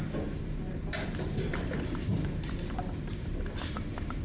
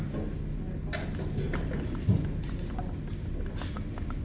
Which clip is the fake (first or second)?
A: first